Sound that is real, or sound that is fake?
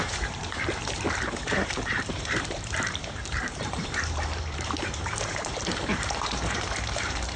fake